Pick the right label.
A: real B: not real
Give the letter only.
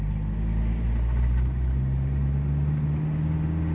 A